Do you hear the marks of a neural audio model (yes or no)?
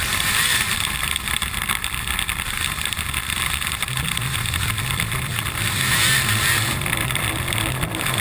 yes